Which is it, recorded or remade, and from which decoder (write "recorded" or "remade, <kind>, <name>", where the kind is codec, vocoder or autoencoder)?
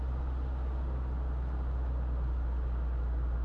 recorded